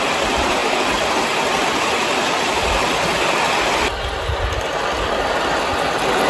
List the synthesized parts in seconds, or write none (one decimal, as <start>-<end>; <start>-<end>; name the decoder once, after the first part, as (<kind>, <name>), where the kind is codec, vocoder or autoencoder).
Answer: none